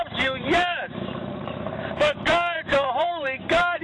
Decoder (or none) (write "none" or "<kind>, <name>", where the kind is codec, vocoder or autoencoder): vocoder, BigVGAN v2